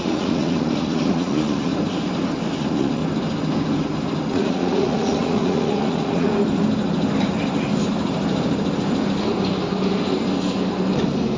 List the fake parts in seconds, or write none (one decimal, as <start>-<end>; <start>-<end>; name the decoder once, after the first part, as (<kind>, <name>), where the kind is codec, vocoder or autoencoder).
0.0-1.7 (vocoder, Vocos); 2.6-3.0; 4.3-6.3